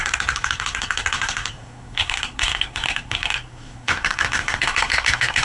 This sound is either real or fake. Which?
fake